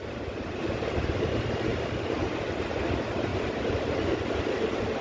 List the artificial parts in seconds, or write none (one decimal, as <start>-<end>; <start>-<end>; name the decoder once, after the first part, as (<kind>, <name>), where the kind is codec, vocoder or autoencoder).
1.7-2.2 (vocoder, BigVGAN v2); 3.3-4.4